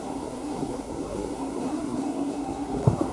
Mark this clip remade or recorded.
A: remade